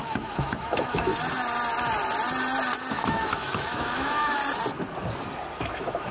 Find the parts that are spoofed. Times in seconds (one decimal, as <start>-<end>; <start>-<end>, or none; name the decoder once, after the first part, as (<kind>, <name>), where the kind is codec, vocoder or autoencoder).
0.0-1.1 (autoencoder, DAC-VAE); 2.9-4.4; 5.6-6.1